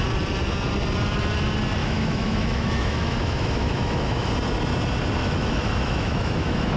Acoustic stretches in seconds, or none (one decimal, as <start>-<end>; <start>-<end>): 0.0-1.8; 4.3-5.2